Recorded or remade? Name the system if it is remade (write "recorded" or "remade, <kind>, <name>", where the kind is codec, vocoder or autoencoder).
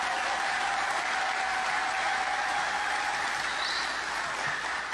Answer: recorded